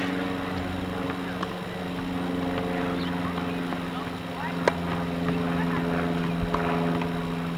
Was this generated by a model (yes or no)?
no